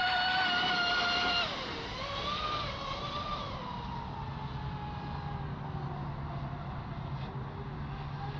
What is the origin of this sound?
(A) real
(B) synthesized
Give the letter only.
A